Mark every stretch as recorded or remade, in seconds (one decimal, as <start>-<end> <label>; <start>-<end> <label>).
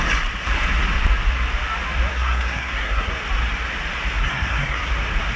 0.0-2.1 recorded; 2.1-3.1 remade; 3.1-4.2 recorded; 4.2-4.9 remade; 4.9-5.4 recorded